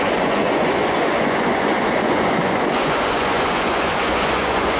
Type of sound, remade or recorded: remade